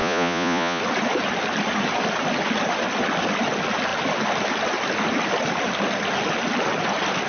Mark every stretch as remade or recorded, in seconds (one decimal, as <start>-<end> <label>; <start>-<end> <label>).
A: 0.0-0.8 remade; 0.8-7.3 recorded